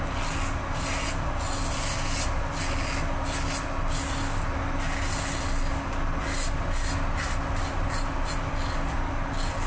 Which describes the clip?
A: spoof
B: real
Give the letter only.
B